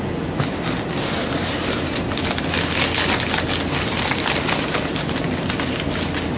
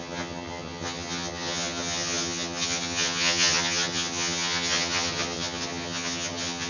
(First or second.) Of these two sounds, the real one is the first